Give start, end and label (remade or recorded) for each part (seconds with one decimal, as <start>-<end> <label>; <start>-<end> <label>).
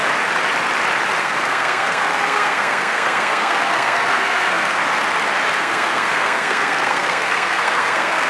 0.0-1.2 recorded; 1.2-4.8 remade; 4.8-5.6 recorded; 5.6-8.3 remade